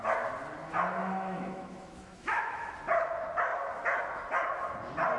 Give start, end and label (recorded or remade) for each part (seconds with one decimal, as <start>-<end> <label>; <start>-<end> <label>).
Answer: 0.0-1.0 recorded; 1.0-2.7 remade; 2.7-5.2 recorded